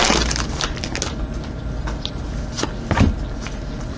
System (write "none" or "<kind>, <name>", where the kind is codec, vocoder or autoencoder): none